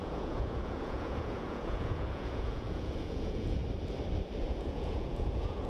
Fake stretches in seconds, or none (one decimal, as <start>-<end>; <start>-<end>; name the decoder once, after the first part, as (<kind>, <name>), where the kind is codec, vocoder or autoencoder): 0.0-3.6 (vocoder, Vocos); 4.5-5.7